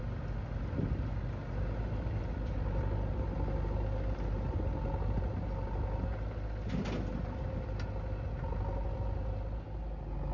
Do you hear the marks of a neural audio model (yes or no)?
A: no